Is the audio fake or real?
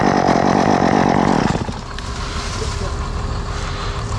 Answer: real